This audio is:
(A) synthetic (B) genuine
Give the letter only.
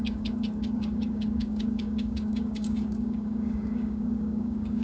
A